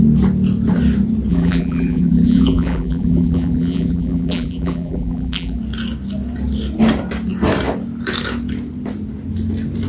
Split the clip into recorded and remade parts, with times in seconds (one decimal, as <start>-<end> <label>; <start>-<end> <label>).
0.0-1.3 recorded; 1.3-5.6 remade; 5.6-9.9 recorded